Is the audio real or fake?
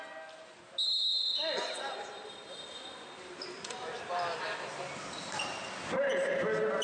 real